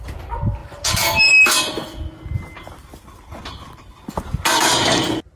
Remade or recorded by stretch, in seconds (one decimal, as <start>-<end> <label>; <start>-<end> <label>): 0.0-5.4 recorded